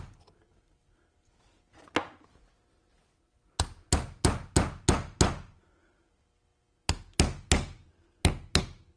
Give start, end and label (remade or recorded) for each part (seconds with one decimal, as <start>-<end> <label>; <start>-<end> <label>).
0.0-9.0 recorded